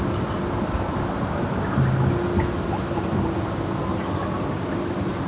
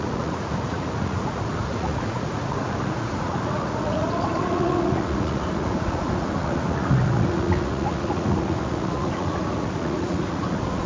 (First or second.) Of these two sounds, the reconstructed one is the second